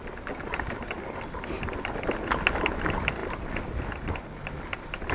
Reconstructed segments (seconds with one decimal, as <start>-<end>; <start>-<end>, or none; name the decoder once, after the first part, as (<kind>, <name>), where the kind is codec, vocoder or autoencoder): none